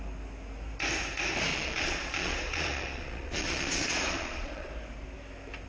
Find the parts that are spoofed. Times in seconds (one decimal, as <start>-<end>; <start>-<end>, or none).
1.5-4.7